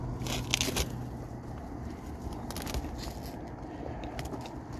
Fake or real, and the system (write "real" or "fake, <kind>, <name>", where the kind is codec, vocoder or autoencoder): real